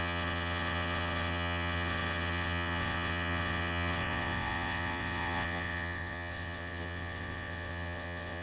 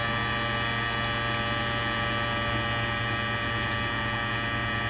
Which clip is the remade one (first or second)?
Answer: first